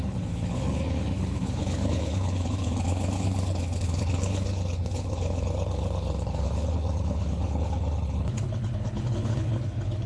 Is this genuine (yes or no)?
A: no